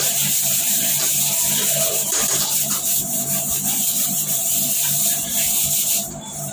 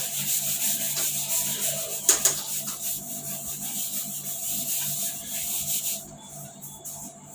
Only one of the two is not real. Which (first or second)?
first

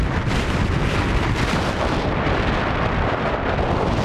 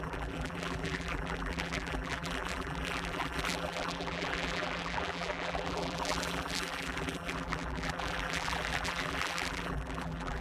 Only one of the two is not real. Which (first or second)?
second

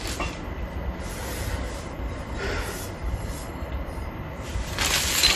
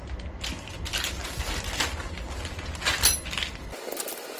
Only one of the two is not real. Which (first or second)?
first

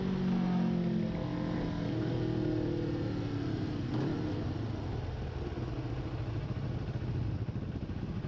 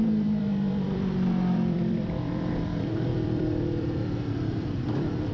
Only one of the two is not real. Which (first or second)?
second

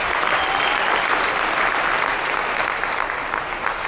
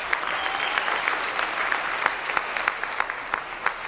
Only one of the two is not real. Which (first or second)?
first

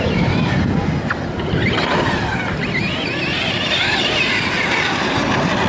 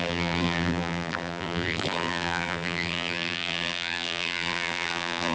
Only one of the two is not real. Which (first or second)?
second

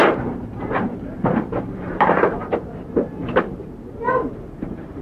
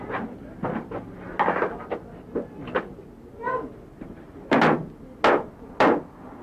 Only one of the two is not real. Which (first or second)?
first